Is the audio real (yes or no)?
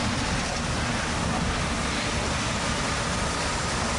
yes